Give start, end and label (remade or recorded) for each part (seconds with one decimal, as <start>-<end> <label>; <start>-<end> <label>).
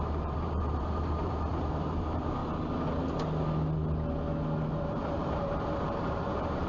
0.0-2.4 remade; 2.4-4.8 recorded; 4.8-6.7 remade